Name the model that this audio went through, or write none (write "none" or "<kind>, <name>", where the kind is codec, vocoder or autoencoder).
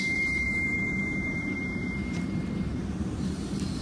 vocoder, BigVGAN v2